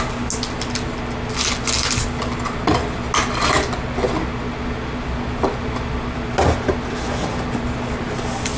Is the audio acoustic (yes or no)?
yes